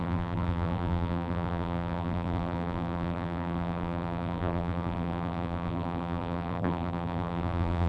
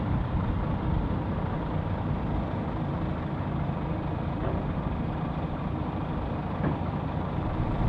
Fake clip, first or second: first